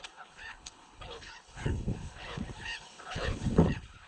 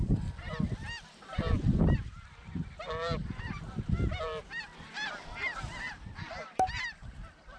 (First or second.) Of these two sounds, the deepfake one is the first